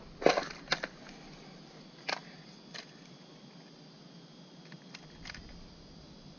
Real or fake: real